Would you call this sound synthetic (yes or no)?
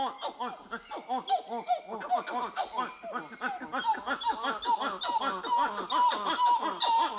no